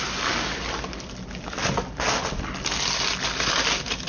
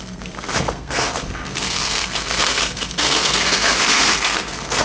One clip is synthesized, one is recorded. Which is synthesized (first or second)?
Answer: second